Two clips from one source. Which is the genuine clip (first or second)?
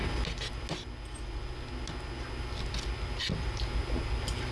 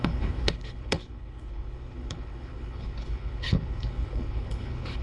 first